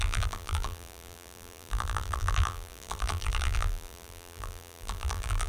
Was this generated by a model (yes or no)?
yes